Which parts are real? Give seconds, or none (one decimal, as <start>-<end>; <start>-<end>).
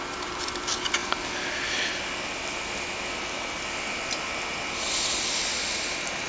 0.0-6.3